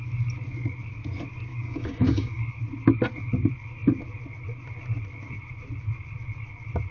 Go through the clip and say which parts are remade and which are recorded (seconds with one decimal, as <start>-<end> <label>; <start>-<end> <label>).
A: 0.0-1.5 recorded; 1.5-2.6 remade; 2.6-6.9 recorded